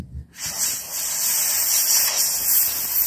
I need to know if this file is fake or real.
real